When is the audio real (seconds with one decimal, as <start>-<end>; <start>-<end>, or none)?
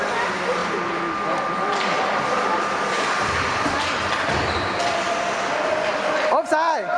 0.0-0.6; 4.8-7.0